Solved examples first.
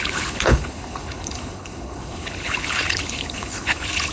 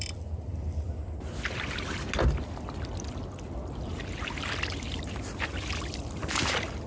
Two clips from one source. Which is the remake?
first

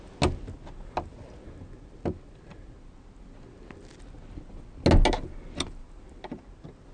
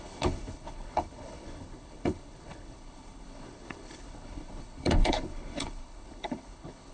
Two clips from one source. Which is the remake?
second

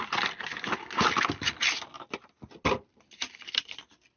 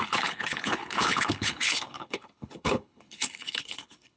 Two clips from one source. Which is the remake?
second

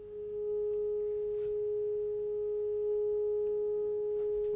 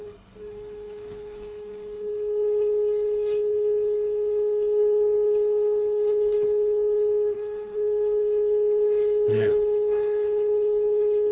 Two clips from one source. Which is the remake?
second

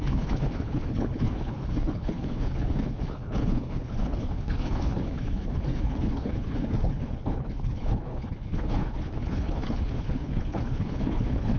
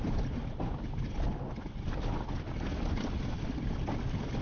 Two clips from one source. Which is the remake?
first